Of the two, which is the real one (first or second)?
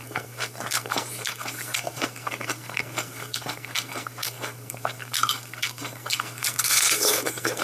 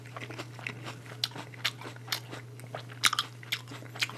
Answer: second